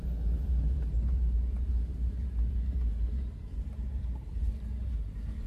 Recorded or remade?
remade